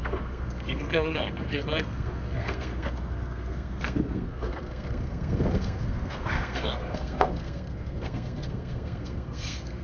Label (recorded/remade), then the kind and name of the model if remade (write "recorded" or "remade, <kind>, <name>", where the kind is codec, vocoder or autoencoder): remade, codec, SNAC